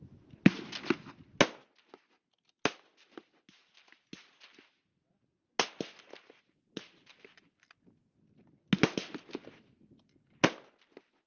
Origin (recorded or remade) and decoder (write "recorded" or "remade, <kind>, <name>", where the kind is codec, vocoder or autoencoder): recorded